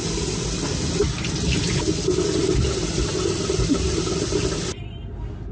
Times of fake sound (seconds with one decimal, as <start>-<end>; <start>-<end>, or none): 1.0-1.7; 2.4-4.0